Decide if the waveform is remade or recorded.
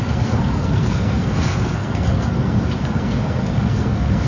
remade